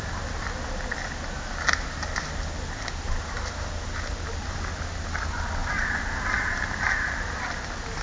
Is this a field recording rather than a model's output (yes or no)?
yes